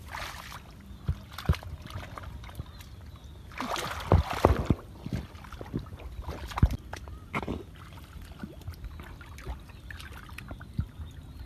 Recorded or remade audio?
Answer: recorded